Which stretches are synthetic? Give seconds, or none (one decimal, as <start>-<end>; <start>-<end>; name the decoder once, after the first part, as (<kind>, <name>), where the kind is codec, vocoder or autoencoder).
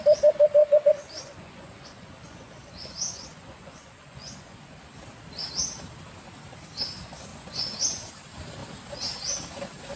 0.6-4.9 (vocoder, Vocos); 7.3-8.1